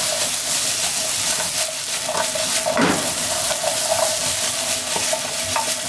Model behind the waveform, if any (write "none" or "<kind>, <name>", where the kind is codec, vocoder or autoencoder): none